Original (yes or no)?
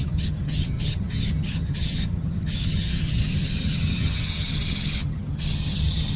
no